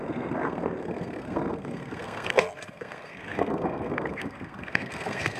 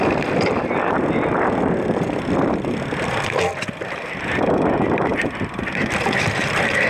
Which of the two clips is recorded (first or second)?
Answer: second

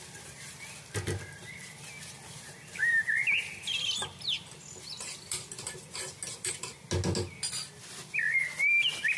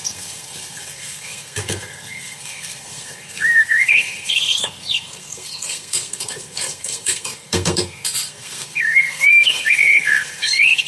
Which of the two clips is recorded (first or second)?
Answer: first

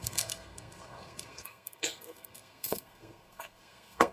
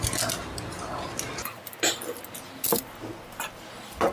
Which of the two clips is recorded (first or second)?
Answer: second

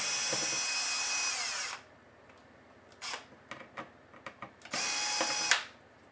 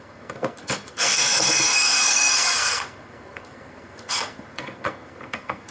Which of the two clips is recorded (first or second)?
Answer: first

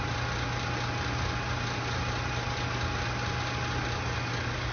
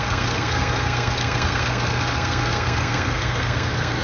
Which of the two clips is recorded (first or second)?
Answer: first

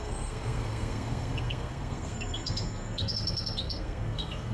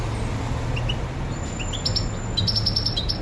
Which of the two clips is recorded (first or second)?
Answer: second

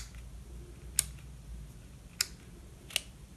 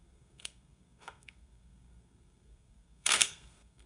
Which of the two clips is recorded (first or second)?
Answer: first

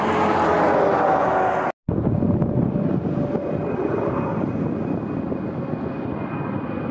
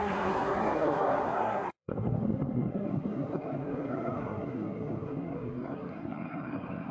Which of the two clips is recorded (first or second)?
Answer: first